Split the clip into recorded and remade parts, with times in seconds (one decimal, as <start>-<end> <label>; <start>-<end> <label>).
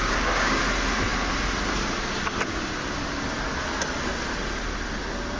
0.0-0.6 remade; 0.6-5.4 recorded